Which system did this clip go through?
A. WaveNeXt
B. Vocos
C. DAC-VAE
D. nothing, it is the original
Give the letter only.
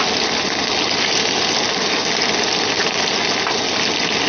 D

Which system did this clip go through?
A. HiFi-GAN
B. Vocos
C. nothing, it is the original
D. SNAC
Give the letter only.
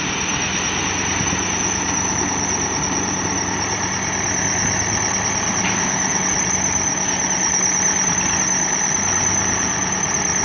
C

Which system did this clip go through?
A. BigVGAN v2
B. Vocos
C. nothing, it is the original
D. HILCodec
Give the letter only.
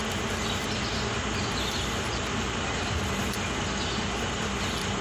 C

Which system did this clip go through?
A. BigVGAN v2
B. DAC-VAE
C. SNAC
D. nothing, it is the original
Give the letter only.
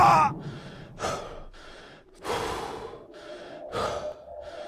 D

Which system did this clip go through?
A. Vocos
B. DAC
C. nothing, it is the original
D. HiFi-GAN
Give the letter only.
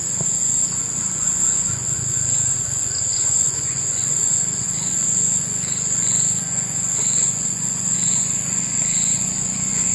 A